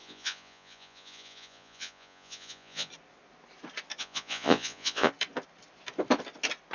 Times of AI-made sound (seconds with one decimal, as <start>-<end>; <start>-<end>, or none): 0.0-2.9; 4.0-5.1